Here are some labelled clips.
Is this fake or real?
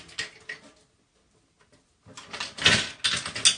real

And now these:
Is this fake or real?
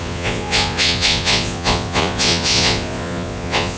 fake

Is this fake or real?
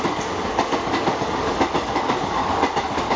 fake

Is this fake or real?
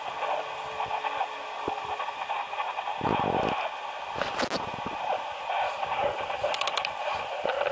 real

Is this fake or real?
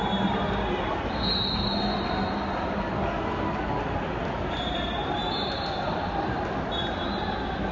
real